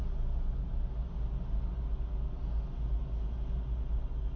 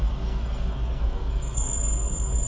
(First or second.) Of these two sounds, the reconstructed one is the second